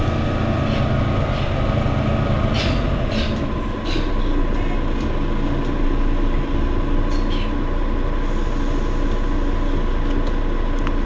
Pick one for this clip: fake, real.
real